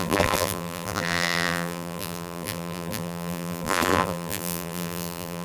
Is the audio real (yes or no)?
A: no